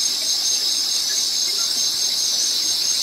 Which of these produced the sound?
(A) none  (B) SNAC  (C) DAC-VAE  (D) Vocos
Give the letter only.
A